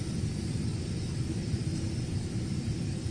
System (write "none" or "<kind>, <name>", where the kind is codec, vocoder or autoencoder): none